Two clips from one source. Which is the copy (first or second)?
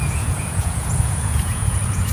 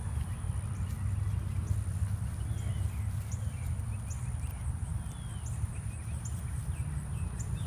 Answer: first